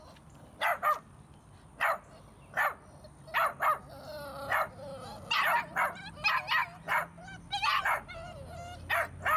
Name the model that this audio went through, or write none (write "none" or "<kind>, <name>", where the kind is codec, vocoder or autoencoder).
none